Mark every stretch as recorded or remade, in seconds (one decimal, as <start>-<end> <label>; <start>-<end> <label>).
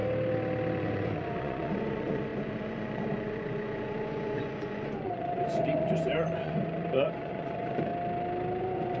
0.0-0.8 recorded; 0.8-7.9 remade; 7.9-8.6 recorded; 8.6-9.0 remade